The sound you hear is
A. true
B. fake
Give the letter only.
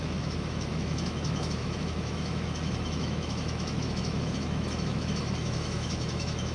B